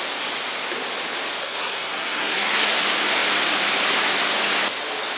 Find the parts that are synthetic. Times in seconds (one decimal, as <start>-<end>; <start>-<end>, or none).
1.4-2.8